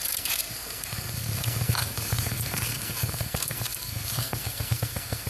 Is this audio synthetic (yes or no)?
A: yes